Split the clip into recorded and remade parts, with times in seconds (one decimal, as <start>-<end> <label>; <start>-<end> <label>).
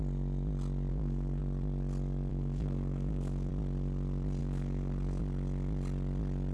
0.0-0.9 recorded; 0.9-1.4 remade; 1.4-2.3 recorded; 2.3-3.5 remade; 3.5-4.4 recorded; 4.4-5.2 remade; 5.2-6.5 recorded